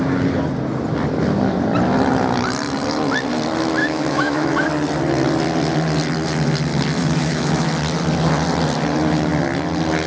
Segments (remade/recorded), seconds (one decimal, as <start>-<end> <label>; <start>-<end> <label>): 0.0-3.8 recorded; 3.8-4.7 remade; 4.7-7.0 recorded; 7.0-7.7 remade; 7.7-10.1 recorded